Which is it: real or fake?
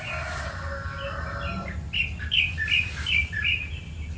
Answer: real